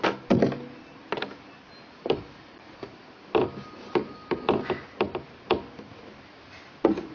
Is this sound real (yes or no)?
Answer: yes